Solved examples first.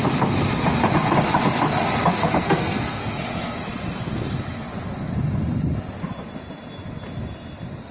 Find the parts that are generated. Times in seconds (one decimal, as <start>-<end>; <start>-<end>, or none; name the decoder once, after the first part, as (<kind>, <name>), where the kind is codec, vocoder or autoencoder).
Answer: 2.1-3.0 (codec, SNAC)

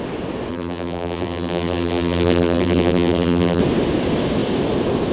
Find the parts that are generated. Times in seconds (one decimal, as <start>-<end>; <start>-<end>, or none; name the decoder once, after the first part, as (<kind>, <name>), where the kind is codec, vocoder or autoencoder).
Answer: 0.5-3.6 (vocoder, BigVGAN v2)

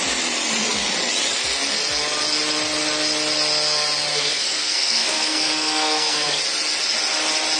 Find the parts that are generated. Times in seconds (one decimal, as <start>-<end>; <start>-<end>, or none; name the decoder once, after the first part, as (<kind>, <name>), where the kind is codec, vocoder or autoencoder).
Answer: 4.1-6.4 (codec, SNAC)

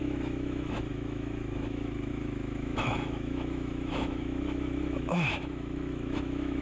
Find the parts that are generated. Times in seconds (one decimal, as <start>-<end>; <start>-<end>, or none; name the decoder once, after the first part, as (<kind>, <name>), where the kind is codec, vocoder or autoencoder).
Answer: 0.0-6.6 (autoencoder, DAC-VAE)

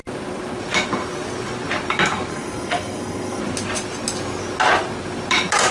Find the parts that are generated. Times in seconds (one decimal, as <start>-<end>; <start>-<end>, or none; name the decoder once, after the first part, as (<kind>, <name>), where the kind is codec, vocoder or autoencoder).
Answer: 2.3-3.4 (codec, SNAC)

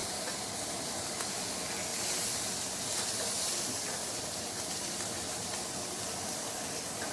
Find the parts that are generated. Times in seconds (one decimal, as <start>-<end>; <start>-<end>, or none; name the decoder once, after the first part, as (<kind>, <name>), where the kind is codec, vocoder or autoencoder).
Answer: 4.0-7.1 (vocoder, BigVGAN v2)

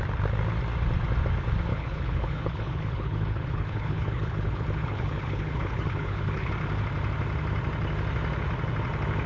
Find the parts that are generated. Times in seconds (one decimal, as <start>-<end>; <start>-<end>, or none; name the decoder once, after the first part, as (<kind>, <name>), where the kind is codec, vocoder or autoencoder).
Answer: 1.7-6.5 (codec, HILCodec)

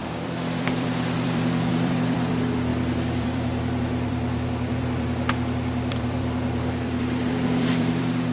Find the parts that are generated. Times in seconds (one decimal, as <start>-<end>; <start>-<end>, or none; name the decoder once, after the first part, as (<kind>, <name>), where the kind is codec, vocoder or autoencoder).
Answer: 0.0-8.3 (vocoder, BigVGAN v2)